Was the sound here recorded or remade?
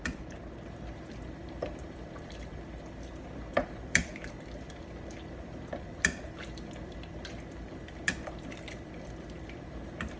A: remade